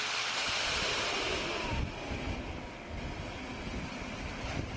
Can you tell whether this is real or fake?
real